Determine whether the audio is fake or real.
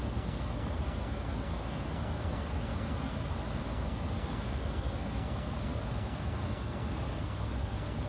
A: fake